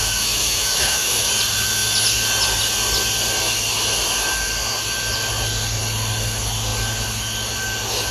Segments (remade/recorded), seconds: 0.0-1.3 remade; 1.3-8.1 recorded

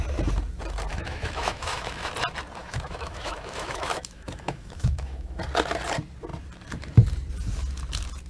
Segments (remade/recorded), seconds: 0.0-0.9 recorded; 0.9-2.1 remade; 2.1-2.6 recorded; 2.6-5.4 remade; 5.4-8.3 recorded

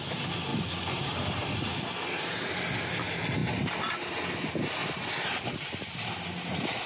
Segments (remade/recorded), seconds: 0.0-6.9 recorded

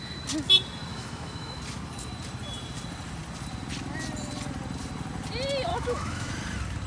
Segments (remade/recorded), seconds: 0.0-0.9 recorded; 0.9-1.6 remade; 1.6-5.7 recorded; 5.7-6.3 remade; 6.3-6.9 recorded